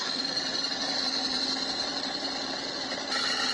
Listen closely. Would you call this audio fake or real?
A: fake